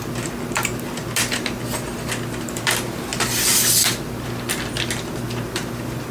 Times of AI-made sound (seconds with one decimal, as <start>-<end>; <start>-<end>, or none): none